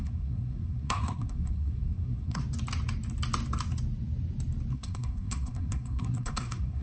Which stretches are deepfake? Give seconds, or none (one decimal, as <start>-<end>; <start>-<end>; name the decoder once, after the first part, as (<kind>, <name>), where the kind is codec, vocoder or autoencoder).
0.0-2.4 (codec, SNAC); 4.7-6.8